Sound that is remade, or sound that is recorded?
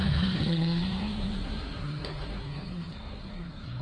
remade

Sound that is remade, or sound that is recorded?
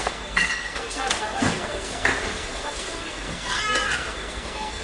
remade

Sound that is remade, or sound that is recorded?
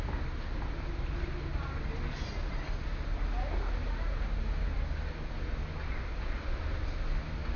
recorded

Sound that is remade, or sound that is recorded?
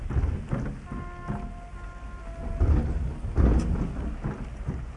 recorded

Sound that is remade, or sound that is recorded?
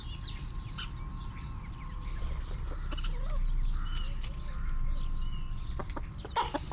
recorded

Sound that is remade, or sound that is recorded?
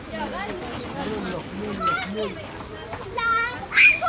recorded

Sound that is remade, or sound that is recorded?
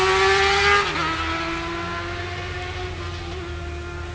recorded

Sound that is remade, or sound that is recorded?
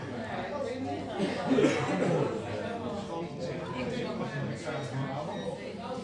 recorded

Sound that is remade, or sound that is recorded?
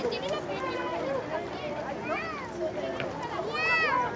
recorded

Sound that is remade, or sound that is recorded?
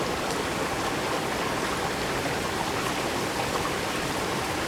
recorded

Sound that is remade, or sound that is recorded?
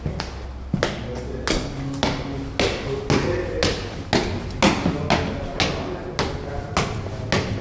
recorded